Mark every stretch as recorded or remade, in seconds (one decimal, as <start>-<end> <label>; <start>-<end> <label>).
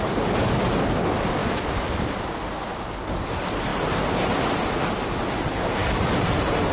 0.0-6.7 recorded